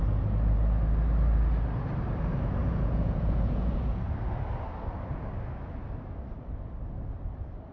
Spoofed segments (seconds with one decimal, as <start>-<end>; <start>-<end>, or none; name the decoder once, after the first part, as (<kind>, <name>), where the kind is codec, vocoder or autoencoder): 2.6-4.0 (vocoder, Vocos)